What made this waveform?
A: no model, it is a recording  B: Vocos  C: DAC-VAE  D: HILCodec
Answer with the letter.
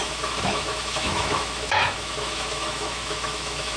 C